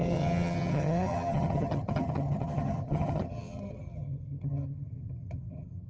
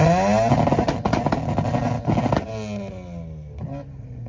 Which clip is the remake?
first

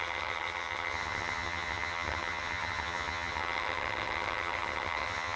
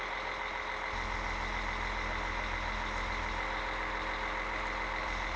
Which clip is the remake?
first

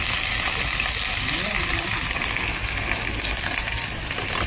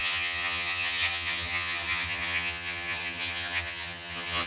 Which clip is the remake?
second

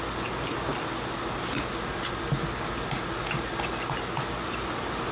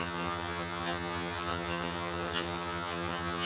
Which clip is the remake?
second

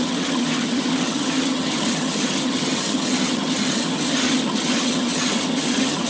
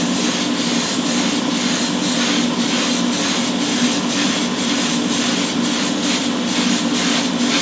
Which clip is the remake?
first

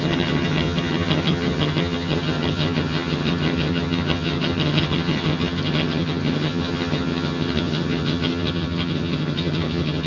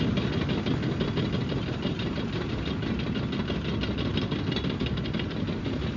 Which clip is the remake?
first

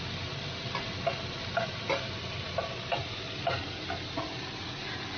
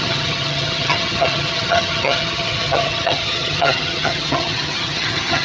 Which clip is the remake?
second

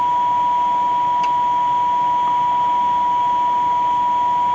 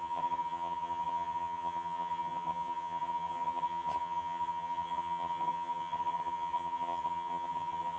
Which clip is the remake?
second